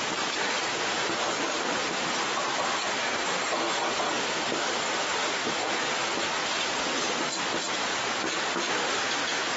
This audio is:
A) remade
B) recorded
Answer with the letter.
A